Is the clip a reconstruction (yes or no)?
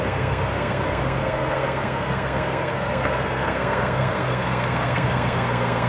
yes